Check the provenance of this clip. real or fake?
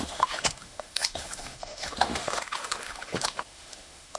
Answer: fake